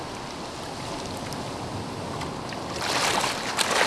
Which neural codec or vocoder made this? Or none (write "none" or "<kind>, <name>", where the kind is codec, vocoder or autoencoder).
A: none